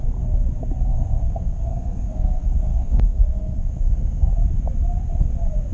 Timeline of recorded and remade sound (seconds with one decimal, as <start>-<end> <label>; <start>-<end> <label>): 0.0-0.9 recorded; 0.9-4.3 remade; 4.3-5.7 recorded